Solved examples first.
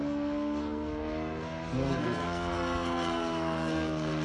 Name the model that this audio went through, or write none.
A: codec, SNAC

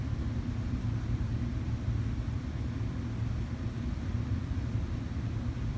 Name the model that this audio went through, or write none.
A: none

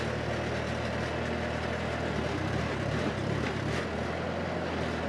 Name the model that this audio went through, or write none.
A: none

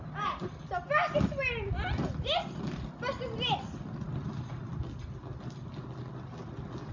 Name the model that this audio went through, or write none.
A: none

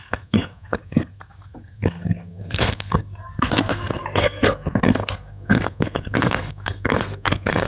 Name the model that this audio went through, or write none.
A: codec, SNAC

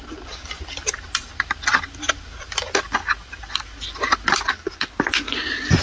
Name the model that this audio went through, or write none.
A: none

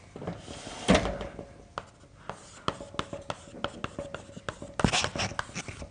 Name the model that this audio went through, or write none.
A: none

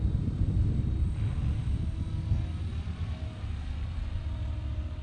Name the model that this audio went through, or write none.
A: none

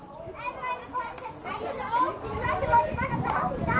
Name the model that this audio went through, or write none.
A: none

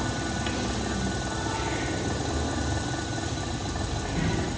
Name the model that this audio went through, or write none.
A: none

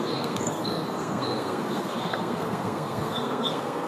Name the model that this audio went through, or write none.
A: codec, SNAC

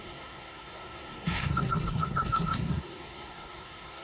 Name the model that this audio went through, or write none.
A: codec, SNAC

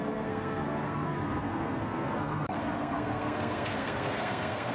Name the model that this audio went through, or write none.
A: codec, SNAC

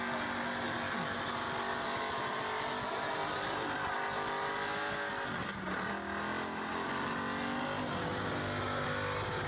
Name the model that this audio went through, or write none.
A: none